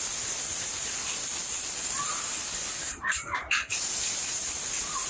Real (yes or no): yes